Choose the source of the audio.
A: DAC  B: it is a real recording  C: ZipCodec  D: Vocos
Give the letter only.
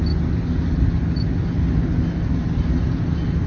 B